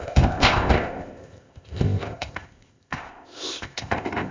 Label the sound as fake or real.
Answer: fake